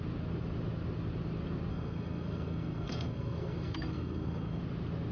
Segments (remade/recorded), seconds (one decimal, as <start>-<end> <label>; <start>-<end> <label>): 0.0-1.7 recorded; 1.7-4.6 remade; 4.6-5.1 recorded

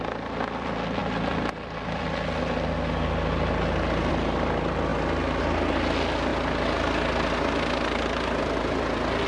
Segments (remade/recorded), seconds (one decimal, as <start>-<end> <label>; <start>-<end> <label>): 0.0-9.3 recorded

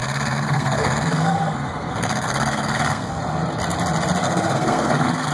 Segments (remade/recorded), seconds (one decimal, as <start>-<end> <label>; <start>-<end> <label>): 0.0-3.2 remade; 3.2-4.2 recorded; 4.2-5.3 remade

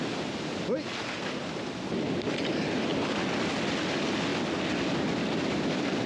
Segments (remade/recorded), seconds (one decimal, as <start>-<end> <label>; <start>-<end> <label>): 0.0-1.0 recorded; 1.0-1.8 remade; 1.8-6.1 recorded

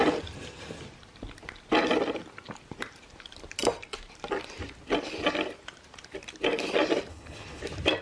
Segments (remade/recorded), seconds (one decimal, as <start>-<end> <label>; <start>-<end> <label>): 0.0-7.1 recorded; 7.1-7.6 remade; 7.6-8.0 recorded

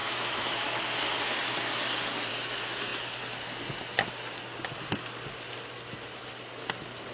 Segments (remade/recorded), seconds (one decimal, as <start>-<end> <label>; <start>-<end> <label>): 0.0-0.8 remade; 0.8-7.1 recorded